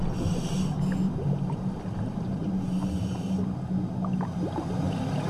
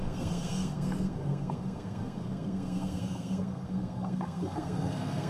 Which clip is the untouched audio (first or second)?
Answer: first